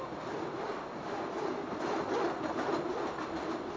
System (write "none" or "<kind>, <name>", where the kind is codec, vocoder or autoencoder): none